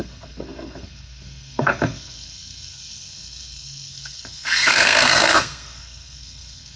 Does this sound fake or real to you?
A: fake